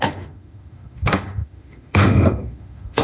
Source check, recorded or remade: remade